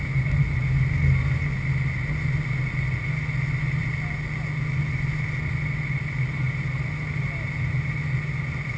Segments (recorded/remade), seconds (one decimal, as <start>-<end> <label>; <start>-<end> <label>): 0.0-8.8 recorded

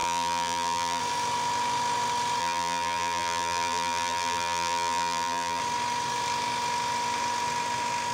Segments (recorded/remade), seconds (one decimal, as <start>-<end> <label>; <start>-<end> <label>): 0.0-1.0 remade; 1.0-2.4 recorded; 2.4-5.6 remade; 5.6-8.1 recorded